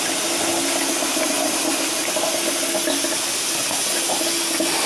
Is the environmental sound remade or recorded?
recorded